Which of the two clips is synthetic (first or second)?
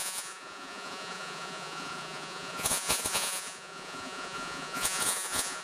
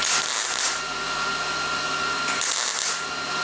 first